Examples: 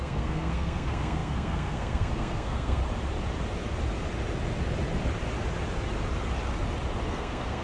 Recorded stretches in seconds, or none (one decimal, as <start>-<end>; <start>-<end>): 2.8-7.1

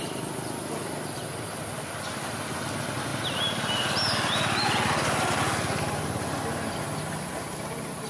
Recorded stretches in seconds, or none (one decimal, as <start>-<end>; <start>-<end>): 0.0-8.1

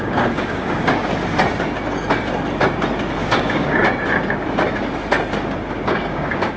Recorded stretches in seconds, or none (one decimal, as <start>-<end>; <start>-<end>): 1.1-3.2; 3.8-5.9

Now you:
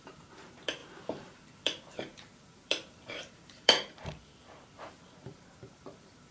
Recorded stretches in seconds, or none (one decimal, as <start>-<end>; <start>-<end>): none

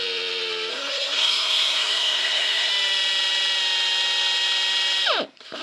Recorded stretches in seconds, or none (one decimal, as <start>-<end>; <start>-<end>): 0.0-0.7; 2.7-5.6

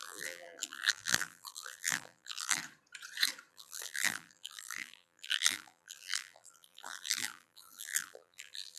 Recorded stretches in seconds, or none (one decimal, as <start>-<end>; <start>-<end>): 2.6-3.5

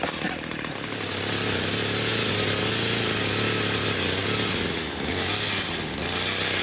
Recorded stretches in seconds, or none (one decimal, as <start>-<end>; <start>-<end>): 0.0-6.6